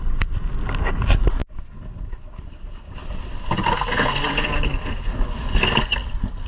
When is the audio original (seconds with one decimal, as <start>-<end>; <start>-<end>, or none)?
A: 0.0-6.5